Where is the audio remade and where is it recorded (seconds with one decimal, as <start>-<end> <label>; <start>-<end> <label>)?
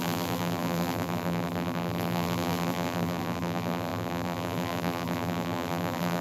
0.0-6.2 remade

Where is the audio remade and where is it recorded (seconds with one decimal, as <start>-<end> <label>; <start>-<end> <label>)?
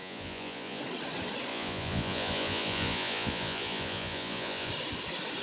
0.0-0.8 remade; 0.8-1.5 recorded; 1.5-4.7 remade; 4.7-5.4 recorded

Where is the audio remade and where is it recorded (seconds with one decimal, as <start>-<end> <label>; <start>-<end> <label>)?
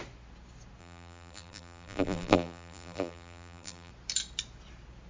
0.0-0.8 recorded; 0.8-3.9 remade; 3.9-5.1 recorded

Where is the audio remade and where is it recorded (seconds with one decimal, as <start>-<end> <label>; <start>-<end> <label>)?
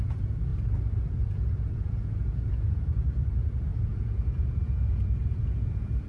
0.0-0.5 remade; 0.5-1.2 recorded; 1.2-6.1 remade